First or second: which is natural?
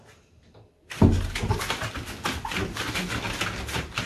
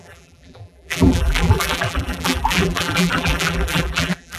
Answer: first